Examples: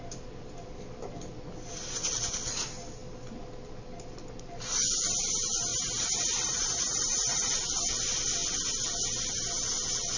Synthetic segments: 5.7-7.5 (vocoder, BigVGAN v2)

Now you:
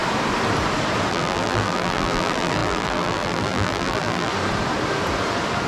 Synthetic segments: 1.1-4.3 (vocoder, BigVGAN v2)

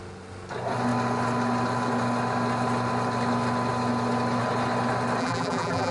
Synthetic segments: 5.2-5.9 (vocoder, BigVGAN v2)

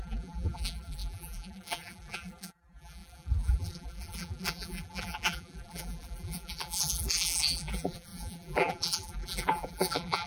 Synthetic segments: 0.0-10.3 (vocoder, BigVGAN v2)

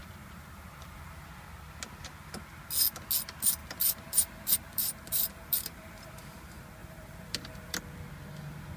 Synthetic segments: 0.0-1.3 (vocoder, BigVGAN v2); 3.6-6.1; 6.8-7.8

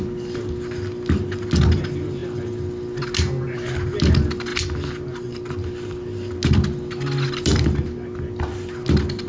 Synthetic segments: none

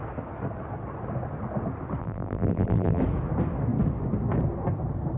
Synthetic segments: 2.0-3.0 (vocoder, BigVGAN v2)